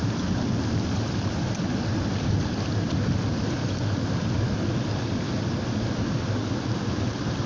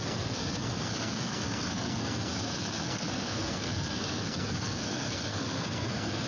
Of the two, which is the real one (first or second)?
first